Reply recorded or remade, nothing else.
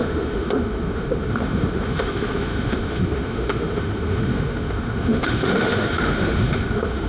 remade